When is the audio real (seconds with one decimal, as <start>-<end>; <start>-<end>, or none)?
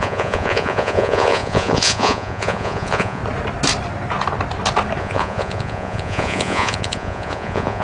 3.2-5.0